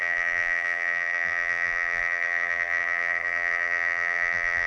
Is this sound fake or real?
fake